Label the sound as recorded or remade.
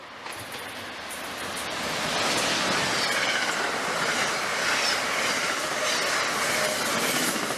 recorded